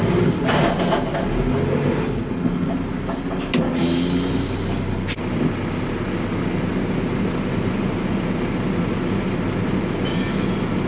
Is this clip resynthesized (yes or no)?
no